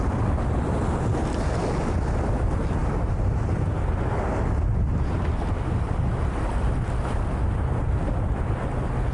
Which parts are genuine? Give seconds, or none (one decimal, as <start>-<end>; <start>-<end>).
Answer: 0.0-9.1